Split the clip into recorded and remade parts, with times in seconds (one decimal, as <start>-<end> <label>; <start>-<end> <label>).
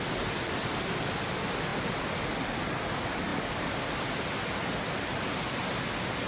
0.0-6.3 recorded